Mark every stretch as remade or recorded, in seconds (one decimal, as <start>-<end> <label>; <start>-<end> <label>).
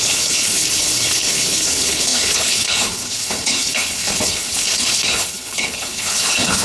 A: 0.0-6.6 remade